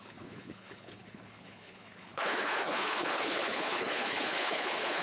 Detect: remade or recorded remade